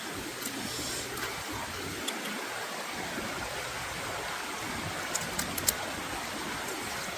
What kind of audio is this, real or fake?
real